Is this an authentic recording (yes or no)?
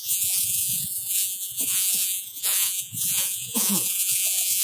no